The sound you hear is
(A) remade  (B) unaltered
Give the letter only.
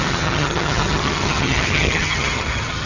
A